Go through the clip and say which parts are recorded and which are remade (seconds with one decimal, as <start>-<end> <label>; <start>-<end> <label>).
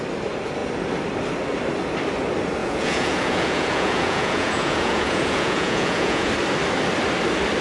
0.0-2.6 recorded; 2.6-6.3 remade; 6.3-7.6 recorded